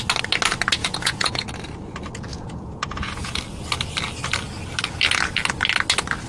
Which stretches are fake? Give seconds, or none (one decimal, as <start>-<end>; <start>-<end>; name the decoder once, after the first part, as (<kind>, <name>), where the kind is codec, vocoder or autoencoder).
0.8-1.5 (vocoder, Vocos); 2.3-3.4